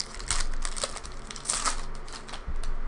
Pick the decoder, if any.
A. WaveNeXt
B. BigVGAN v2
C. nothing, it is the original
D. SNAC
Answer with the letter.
C